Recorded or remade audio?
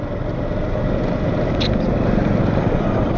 recorded